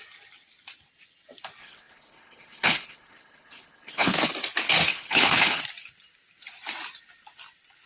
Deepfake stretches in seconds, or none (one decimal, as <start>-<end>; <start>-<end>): 1.6-4.3; 4.9-5.6